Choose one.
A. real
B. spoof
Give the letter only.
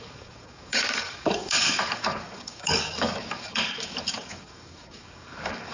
B